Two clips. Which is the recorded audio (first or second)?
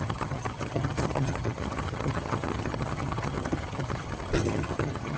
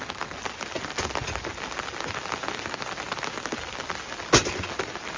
second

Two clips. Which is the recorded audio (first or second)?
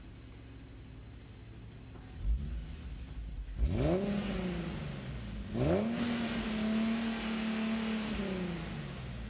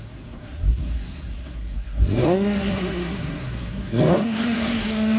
first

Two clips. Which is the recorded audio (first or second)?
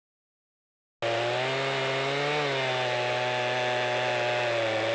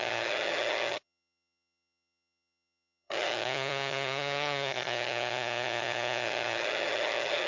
first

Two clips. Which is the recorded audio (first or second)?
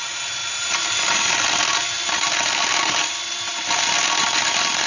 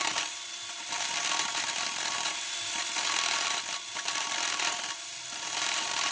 first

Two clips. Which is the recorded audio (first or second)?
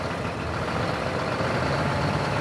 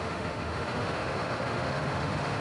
first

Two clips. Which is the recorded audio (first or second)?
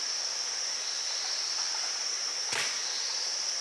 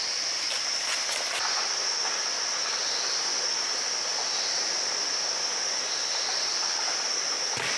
second